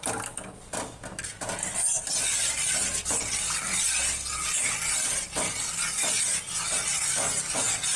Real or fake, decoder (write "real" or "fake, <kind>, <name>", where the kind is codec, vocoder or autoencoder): real